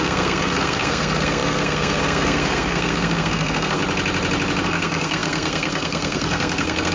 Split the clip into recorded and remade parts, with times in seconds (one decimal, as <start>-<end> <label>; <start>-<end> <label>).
0.0-3.8 remade; 3.8-4.6 recorded; 4.6-6.9 remade